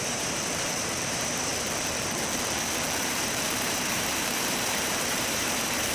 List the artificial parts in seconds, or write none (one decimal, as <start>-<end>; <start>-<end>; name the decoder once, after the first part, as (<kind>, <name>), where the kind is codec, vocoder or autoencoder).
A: 0.0-1.5 (vocoder, BigVGAN v2); 3.0-5.9